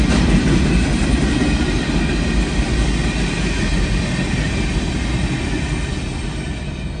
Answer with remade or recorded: recorded